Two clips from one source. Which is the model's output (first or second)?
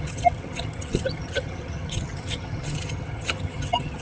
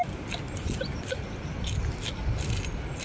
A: first